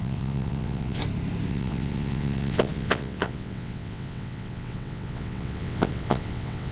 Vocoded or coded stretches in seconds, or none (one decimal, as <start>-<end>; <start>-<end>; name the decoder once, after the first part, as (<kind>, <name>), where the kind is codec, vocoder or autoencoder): 0.0-1.0 (vocoder, WaveNeXt); 1.5-6.7